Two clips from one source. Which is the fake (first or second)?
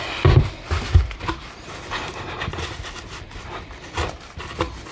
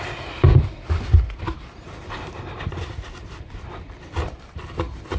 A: second